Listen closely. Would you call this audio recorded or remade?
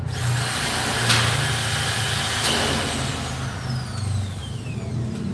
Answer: recorded